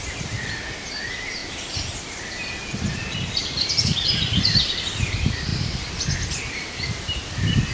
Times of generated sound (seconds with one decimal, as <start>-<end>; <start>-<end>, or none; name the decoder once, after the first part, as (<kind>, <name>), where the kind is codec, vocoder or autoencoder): 0.0-1.4 (vocoder, BigVGAN v2); 2.0-3.0; 3.7-5.5; 6.5-7.7